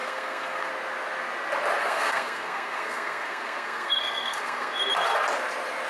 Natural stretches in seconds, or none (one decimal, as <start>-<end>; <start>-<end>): 0.7-1.8; 4.7-5.9